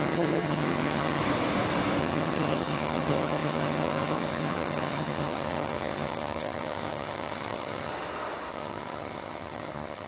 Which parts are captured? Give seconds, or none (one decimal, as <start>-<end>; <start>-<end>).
1.2-2.0; 7.9-8.5